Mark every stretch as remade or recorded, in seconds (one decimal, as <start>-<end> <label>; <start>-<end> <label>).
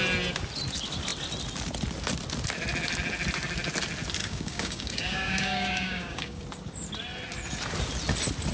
0.0-4.2 recorded; 4.2-6.4 remade; 6.4-8.5 recorded